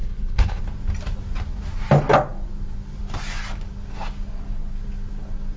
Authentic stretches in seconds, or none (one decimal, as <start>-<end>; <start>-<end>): 0.6-5.6